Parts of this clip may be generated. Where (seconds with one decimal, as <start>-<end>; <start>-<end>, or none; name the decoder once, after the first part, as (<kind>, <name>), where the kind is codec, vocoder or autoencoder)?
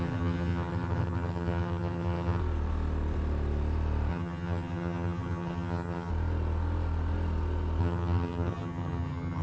0.0-2.4 (vocoder, HiFi-GAN); 4.1-6.1; 7.8-9.4